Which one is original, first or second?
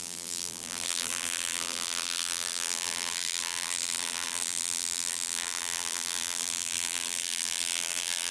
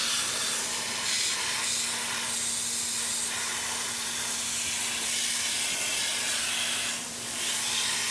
second